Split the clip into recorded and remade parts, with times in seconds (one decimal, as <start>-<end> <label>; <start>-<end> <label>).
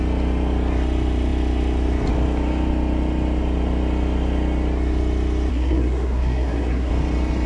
0.0-5.5 recorded; 5.5-6.9 remade; 6.9-7.5 recorded